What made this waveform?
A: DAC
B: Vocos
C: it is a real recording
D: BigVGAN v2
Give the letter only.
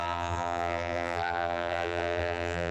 D